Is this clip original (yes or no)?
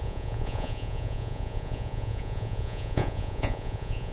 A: no